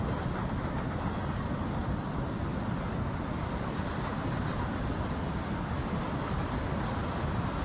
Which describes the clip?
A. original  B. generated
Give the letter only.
A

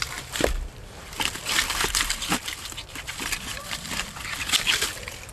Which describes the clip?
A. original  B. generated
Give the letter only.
B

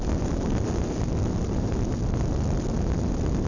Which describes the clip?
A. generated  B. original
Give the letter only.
B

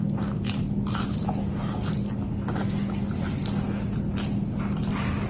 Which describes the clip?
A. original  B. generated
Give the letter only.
A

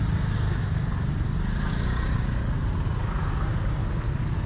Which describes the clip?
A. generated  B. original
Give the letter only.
B